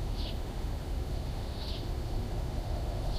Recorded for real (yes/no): no